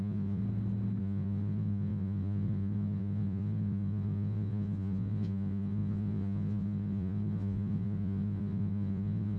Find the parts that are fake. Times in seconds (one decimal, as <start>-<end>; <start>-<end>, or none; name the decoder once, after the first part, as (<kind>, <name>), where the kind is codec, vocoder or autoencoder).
0.0-0.4 (vocoder, Vocos); 1.0-9.4